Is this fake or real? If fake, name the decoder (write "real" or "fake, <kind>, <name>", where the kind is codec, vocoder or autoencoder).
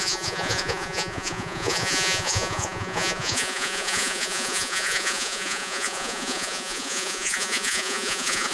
fake, vocoder, Vocos